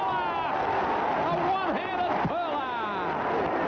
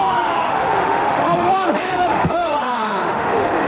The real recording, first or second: first